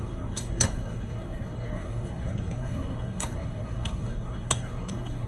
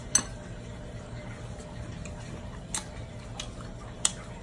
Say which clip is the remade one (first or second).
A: first